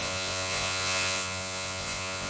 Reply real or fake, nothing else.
fake